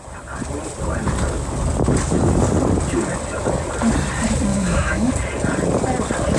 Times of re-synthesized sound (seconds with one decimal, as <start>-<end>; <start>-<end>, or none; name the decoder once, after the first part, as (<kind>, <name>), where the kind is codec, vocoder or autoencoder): 4.5-5.1 (autoencoder, DAC-VAE)